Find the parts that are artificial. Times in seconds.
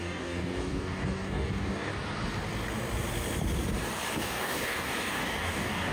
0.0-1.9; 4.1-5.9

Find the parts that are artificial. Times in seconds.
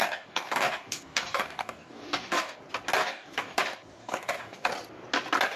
0.0-2.6; 3.0-3.6; 4.0-4.7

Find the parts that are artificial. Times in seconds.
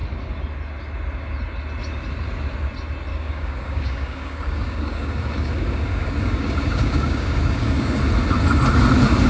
3.1-8.0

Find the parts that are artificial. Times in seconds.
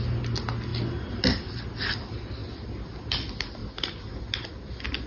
none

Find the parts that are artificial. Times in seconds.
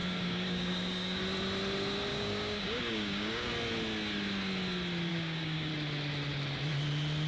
0.0-1.2; 2.1-3.5; 5.1-5.7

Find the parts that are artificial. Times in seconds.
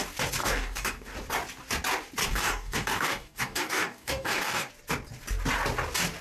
0.4-1.1; 2.2-4.7